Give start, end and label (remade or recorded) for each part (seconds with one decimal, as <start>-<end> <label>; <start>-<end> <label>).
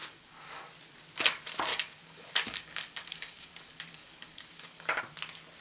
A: 0.0-0.7 remade; 0.7-1.7 recorded; 1.7-5.0 remade; 5.0-5.6 recorded